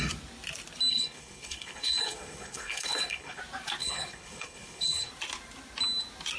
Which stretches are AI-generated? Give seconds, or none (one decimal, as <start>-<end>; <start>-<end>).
0.9-3.4; 3.8-5.1